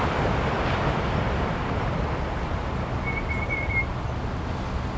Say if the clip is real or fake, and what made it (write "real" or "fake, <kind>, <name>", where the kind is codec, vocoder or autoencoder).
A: real